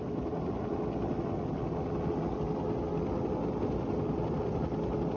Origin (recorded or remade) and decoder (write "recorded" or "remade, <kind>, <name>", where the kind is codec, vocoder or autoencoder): recorded